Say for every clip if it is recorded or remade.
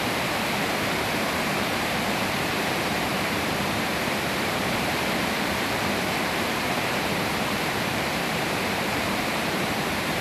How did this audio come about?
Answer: remade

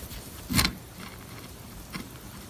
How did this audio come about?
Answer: remade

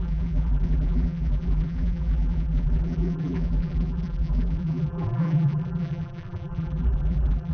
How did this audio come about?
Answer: remade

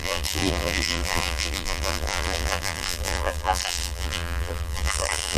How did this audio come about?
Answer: remade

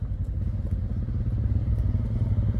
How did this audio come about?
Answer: recorded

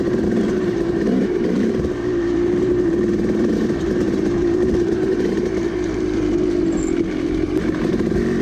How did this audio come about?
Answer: remade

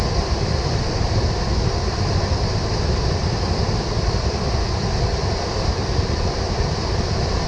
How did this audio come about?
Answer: remade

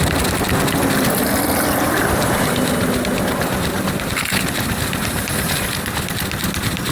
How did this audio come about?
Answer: recorded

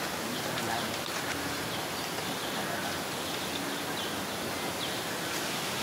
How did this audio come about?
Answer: recorded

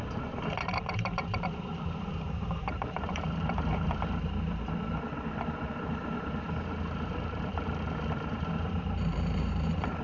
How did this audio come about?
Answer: remade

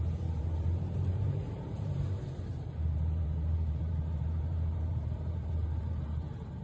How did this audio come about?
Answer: remade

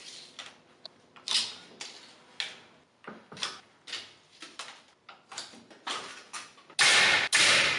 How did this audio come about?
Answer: recorded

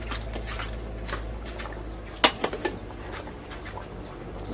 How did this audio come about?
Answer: recorded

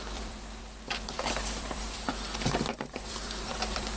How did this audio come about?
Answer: remade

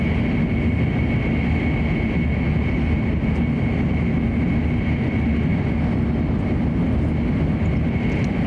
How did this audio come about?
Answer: recorded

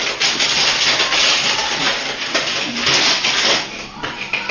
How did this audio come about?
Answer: recorded